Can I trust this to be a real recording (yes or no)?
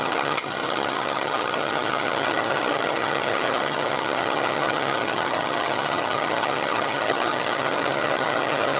no